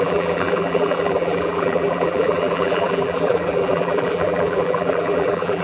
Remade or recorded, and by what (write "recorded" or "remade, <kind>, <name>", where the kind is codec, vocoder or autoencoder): remade, vocoder, BigVGAN v2